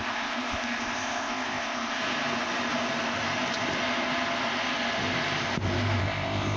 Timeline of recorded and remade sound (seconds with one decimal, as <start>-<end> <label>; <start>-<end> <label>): 0.0-2.0 remade; 2.0-6.0 recorded; 6.0-6.6 remade